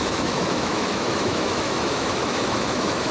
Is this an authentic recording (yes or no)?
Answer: no